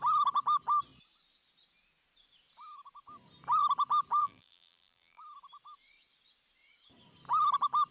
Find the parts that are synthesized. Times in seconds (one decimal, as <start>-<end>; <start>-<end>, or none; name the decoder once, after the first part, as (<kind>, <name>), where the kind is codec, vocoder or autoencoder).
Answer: 4.2-5.2 (vocoder, BigVGAN v2)